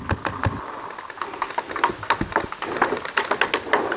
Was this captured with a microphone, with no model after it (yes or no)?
yes